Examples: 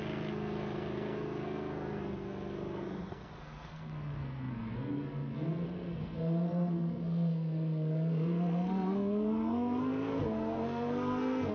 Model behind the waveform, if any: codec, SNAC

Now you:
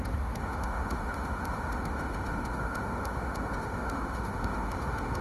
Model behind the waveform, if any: autoencoder, DAC-VAE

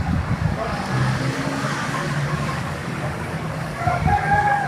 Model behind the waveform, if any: codec, DAC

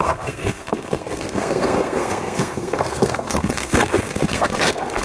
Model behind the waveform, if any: codec, SNAC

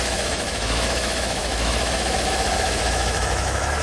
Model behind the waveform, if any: autoencoder, DAC-VAE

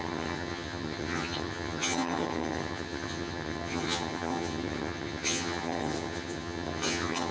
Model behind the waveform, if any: vocoder, HiFi-GAN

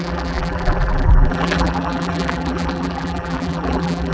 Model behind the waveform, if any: vocoder, BigVGAN v2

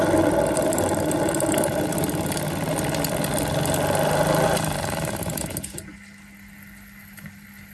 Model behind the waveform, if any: none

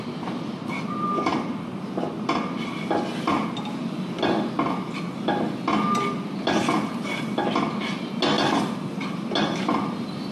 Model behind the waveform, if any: none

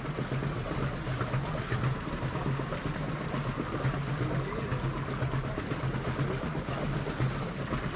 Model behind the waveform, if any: none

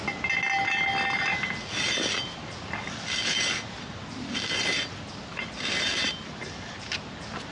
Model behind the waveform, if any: none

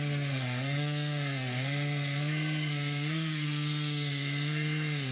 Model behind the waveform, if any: codec, SNAC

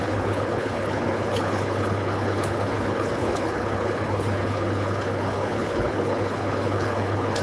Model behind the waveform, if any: codec, HILCodec